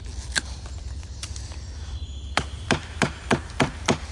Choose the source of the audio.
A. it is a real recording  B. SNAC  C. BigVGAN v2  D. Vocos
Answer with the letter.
A